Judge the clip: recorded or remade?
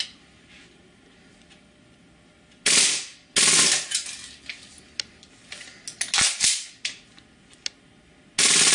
recorded